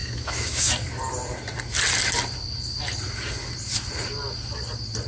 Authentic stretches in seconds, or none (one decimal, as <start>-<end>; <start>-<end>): 0.7-5.1